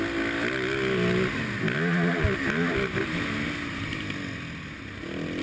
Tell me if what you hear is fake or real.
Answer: real